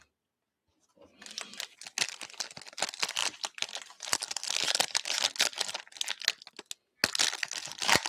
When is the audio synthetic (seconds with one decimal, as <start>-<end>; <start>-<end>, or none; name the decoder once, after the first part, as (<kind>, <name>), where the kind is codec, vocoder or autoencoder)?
3.2-5.2 (vocoder, BigVGAN v2)